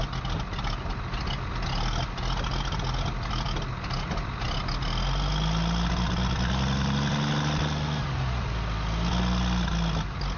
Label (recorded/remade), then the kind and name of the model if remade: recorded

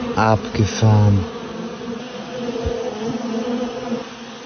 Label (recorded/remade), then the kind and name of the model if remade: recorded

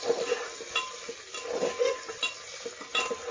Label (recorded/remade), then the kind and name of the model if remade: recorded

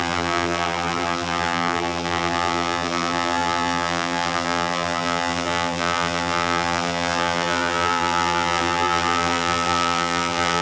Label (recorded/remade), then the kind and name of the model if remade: remade, vocoder, BigVGAN v2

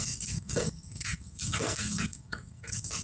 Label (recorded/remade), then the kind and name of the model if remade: remade, codec, SNAC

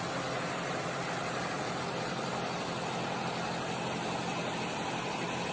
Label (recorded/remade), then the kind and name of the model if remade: remade, vocoder, BigVGAN v2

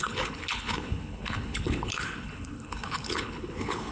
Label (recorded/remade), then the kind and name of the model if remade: remade, codec, HILCodec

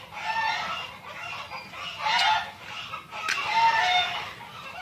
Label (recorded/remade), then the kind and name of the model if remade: recorded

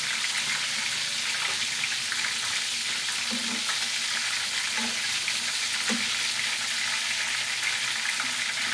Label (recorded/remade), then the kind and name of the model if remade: recorded